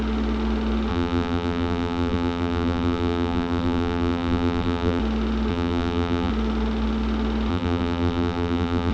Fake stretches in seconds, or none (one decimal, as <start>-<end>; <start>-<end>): 0.9-5.0; 5.5-6.3; 7.5-8.9